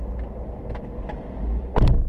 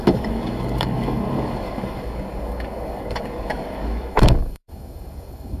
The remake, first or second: second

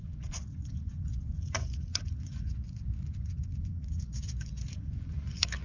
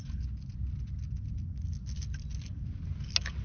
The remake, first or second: first